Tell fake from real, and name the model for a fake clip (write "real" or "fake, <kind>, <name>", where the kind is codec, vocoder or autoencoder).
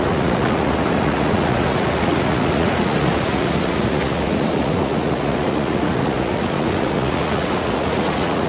fake, vocoder, Vocos